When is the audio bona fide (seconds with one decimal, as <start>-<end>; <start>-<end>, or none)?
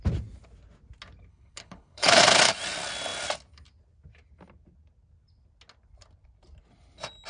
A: 0.0-1.3; 2.2-7.3